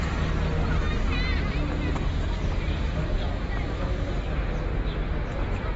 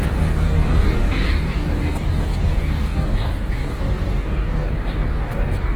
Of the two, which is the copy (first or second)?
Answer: second